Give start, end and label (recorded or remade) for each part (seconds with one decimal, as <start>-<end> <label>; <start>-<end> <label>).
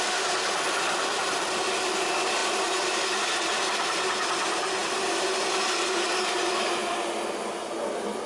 0.0-8.3 recorded